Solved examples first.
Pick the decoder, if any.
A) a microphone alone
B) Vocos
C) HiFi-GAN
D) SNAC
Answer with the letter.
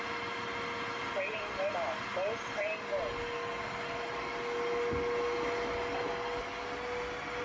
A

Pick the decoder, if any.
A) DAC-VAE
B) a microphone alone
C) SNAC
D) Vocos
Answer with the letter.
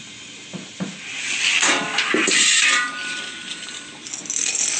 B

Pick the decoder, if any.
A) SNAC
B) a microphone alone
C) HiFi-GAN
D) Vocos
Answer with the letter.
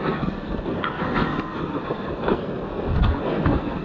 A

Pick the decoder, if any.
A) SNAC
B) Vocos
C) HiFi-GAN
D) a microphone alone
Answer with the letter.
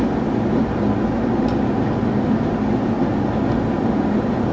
D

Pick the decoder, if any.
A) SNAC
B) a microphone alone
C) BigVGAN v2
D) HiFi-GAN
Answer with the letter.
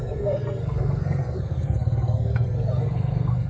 A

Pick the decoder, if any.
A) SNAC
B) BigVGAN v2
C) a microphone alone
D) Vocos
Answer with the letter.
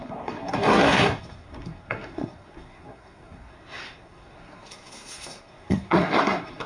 A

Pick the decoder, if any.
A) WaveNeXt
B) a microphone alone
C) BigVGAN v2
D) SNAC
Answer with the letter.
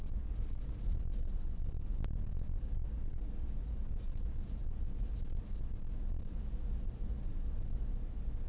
B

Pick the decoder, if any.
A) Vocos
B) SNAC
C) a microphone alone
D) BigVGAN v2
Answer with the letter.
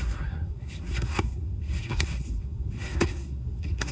B